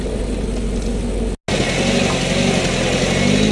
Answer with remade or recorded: recorded